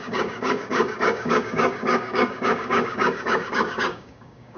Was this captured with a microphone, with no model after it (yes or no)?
no